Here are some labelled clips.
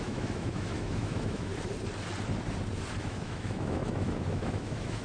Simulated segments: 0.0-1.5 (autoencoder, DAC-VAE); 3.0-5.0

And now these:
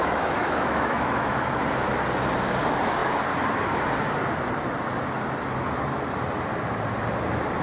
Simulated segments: 0.0-1.6 (autoencoder, DAC-VAE)

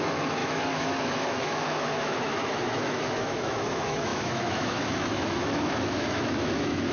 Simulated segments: 0.0-6.9 (autoencoder, DAC-VAE)